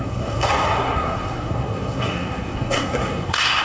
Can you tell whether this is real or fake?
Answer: fake